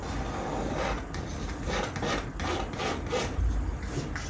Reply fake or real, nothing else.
real